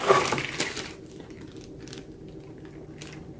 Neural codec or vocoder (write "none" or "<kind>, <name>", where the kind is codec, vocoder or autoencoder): none